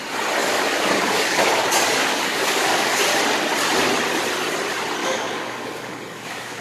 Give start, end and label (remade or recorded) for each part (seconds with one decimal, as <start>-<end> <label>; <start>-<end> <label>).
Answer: 0.0-0.4 recorded; 0.4-3.0 remade; 3.0-5.0 recorded; 5.0-6.6 remade